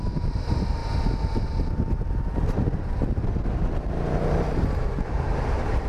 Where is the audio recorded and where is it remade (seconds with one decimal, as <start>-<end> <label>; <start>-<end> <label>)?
0.0-0.8 remade; 0.8-3.1 recorded; 3.1-5.9 remade